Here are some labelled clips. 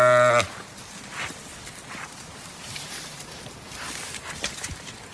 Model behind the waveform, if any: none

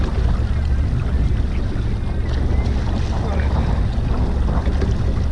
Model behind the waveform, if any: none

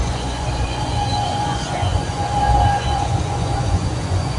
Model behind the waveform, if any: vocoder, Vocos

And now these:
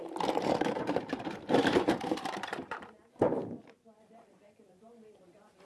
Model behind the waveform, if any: vocoder, BigVGAN v2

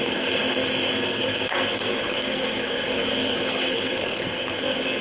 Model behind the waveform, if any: codec, SNAC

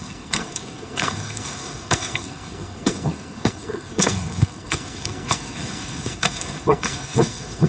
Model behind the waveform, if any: codec, SNAC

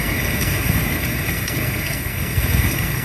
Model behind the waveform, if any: codec, SNAC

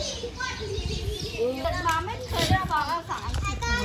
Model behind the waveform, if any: none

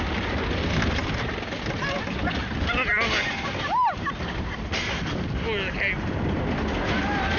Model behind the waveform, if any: none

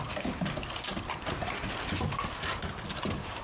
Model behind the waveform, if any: none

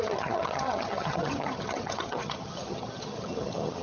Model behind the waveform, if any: vocoder, HiFi-GAN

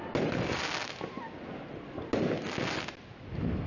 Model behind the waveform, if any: none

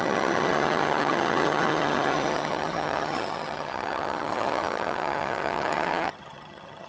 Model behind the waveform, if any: vocoder, HiFi-GAN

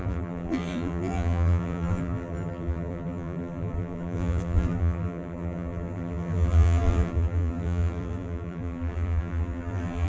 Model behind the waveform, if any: vocoder, BigVGAN v2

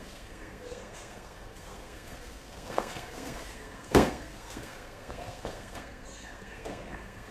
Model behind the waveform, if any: codec, SNAC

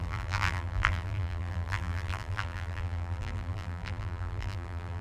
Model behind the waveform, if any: vocoder, BigVGAN v2